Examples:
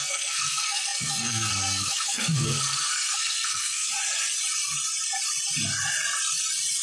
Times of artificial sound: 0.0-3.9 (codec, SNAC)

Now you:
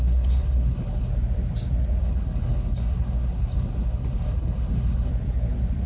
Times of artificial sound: 0.0-1.1 (codec, HILCodec); 2.0-5.1